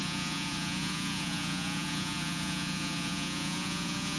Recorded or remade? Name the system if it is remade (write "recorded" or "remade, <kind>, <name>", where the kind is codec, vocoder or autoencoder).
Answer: remade, vocoder, Vocos